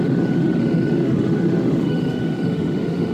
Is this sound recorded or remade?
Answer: remade